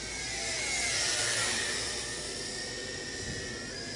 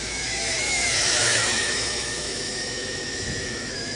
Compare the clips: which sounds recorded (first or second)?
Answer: first